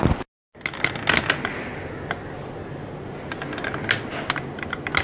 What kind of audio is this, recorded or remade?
recorded